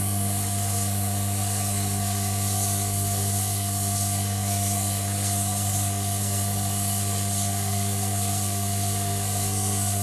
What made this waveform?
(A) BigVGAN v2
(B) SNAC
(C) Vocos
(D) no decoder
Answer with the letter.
B